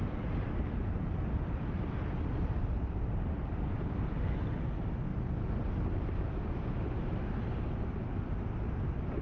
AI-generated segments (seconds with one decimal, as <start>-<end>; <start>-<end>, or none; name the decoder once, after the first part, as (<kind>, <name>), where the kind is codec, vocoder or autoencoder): none